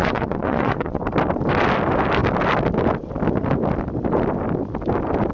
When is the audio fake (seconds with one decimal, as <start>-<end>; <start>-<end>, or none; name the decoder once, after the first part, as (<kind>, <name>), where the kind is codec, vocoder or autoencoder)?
0.0-1.0 (vocoder, Vocos)